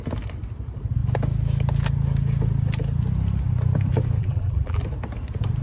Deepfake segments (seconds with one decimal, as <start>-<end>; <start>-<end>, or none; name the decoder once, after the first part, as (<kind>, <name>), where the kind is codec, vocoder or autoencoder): 4.2-4.8 (vocoder, BigVGAN v2)